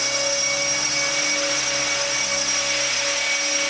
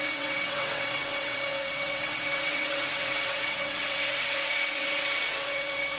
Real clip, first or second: first